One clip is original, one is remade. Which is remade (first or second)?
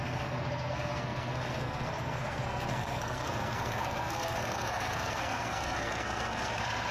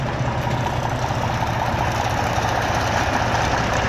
first